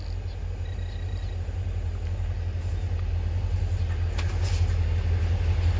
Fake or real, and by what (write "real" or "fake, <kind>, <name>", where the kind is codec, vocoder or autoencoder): real